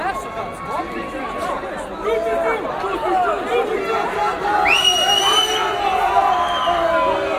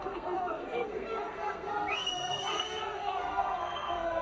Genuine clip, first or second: first